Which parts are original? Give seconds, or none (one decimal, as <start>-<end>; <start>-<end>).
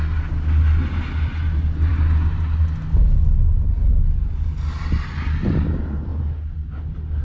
0.0-7.2